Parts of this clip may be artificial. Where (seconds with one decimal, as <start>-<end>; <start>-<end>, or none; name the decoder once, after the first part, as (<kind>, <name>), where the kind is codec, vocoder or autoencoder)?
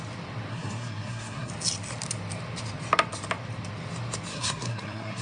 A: 0.5-1.5 (codec, SNAC); 4.3-5.2